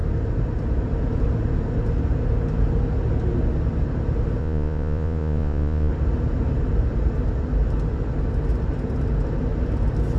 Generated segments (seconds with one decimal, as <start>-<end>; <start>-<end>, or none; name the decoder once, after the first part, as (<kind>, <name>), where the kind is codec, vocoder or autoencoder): 4.4-5.9 (vocoder, Vocos)

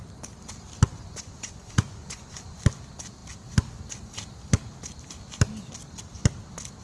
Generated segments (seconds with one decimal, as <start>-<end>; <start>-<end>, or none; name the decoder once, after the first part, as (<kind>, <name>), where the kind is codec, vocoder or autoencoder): 0.9-2.6 (vocoder, Vocos)

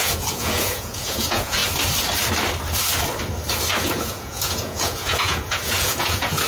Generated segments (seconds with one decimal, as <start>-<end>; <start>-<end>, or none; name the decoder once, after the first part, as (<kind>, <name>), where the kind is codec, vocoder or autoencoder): 0.0-1.6 (vocoder, Vocos); 3.8-6.5

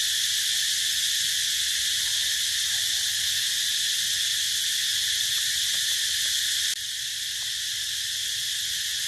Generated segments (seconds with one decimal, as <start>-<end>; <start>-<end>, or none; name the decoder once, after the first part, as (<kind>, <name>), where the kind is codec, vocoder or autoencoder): none

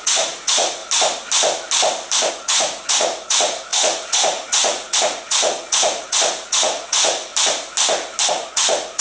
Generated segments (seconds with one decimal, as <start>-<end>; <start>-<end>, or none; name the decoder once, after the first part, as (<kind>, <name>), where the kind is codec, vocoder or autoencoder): 0.0-0.8 (vocoder, Vocos); 2.3-7.3; 8.3-9.0